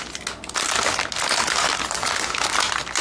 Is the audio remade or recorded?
recorded